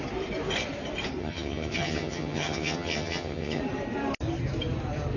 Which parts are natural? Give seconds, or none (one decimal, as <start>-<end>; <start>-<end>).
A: 0.0-1.2; 3.6-5.2